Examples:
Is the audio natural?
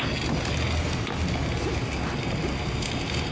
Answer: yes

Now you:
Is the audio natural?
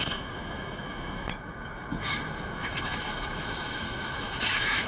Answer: no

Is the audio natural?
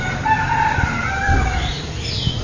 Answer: no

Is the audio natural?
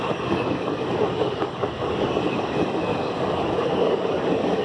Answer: no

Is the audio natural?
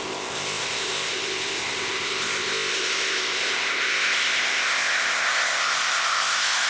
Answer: no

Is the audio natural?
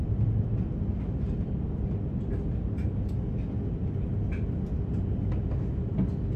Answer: yes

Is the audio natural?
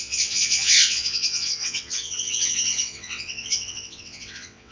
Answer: no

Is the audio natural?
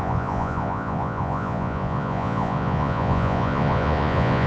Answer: no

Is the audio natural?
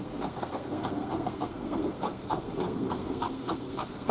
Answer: no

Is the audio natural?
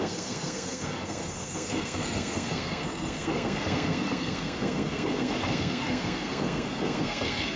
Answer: no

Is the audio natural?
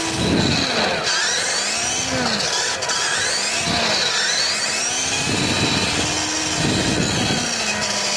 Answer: yes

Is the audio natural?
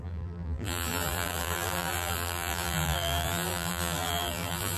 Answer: no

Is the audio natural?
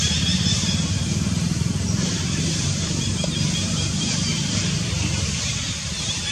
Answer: no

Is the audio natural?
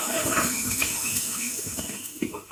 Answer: no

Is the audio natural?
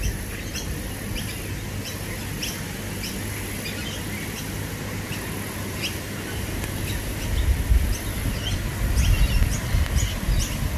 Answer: yes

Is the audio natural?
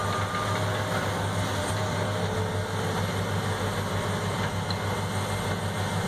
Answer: yes